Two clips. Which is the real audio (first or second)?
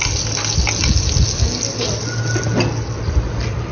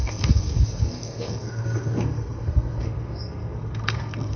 first